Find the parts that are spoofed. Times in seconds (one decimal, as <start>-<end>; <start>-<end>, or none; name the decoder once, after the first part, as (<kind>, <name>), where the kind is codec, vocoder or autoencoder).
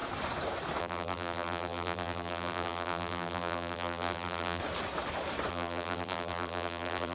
0.8-4.6 (vocoder, BigVGAN v2); 5.5-7.1